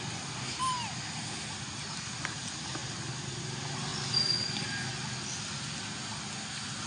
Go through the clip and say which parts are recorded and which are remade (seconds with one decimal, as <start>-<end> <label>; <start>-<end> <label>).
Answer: 0.0-6.9 recorded